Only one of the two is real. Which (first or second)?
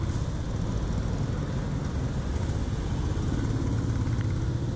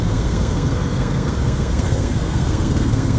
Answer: first